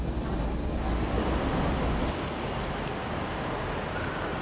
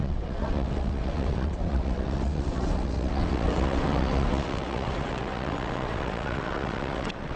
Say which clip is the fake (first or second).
second